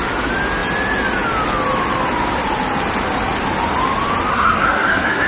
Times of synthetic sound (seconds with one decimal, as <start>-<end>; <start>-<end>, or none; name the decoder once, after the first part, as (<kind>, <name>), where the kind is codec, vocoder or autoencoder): 4.3-5.3 (codec, SNAC)